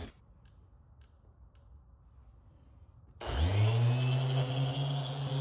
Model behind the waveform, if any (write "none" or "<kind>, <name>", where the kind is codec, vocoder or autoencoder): none